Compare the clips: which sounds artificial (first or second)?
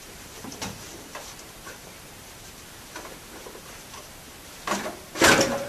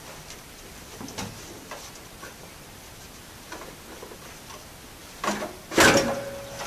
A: first